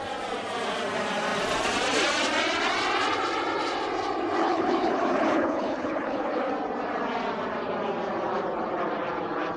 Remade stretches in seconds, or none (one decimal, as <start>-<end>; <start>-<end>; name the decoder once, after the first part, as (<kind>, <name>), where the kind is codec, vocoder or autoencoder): 4.4-6.5 (codec, HILCodec)